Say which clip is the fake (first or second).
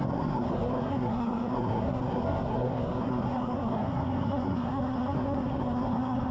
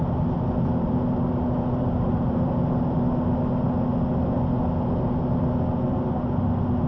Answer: first